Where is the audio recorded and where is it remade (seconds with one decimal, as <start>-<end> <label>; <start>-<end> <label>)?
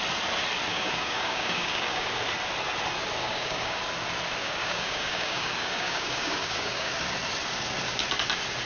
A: 0.0-0.7 recorded; 0.7-2.1 remade; 2.1-3.2 recorded; 3.2-3.8 remade; 3.8-4.4 recorded; 4.4-6.9 remade; 6.9-8.7 recorded